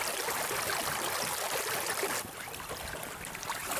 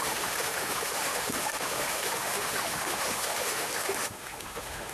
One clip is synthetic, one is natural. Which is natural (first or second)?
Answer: first